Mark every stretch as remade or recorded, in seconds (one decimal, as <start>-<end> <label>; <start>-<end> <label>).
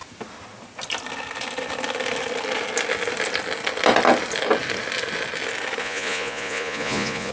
0.0-5.8 recorded; 5.8-7.3 remade